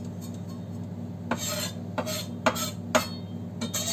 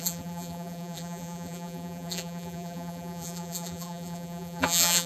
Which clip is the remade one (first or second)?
second